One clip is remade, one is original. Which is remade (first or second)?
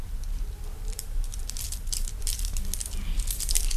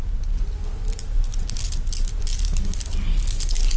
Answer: first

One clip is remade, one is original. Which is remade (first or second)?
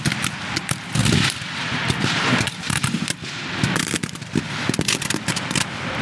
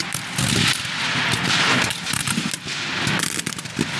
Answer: first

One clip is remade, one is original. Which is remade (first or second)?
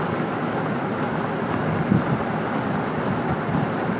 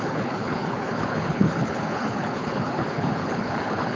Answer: second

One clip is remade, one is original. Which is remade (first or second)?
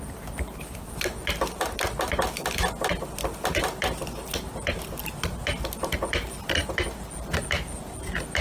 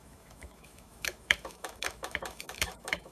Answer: second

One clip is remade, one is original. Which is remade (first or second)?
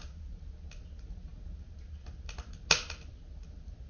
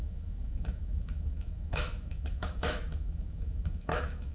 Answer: second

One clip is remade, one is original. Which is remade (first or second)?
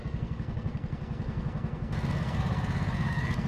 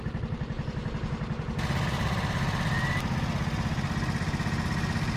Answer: first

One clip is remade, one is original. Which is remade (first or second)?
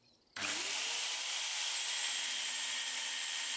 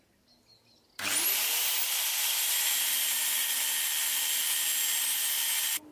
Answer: first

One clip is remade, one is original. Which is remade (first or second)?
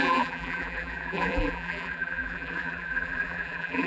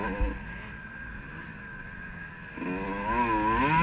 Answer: first